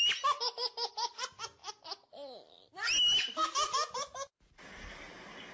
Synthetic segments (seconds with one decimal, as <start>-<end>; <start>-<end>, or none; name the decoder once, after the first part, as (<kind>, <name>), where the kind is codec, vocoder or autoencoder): none